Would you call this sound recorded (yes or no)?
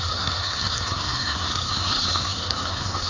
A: no